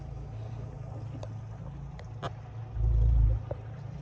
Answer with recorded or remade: recorded